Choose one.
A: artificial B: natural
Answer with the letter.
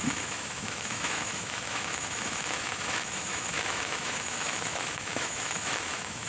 A